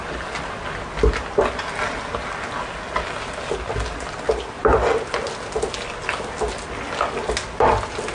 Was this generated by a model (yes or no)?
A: no